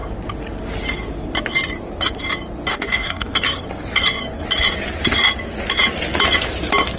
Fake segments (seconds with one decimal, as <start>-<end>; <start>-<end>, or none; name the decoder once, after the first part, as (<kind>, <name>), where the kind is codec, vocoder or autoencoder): 2.7-3.3 (codec, DAC)